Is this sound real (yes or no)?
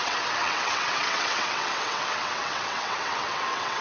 no